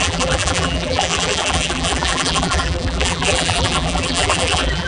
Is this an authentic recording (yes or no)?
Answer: no